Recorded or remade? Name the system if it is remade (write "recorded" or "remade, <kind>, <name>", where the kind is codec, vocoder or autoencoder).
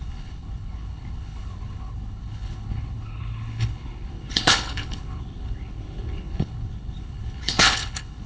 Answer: remade, codec, HILCodec